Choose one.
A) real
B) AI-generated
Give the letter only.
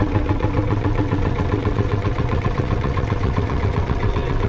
B